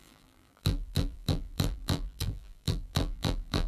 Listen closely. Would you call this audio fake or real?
fake